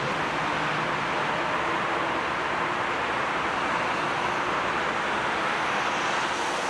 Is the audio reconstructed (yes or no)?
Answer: no